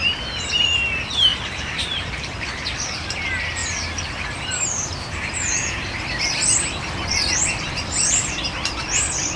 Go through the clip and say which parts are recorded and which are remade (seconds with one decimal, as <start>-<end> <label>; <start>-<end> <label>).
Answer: 0.0-1.3 recorded; 1.3-3.2 remade; 3.2-3.6 recorded; 3.6-5.5 remade; 5.5-9.4 recorded